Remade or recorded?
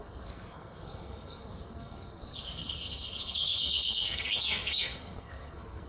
remade